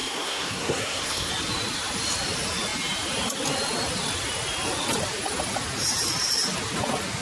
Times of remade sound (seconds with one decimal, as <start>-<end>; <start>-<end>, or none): 0.0-1.3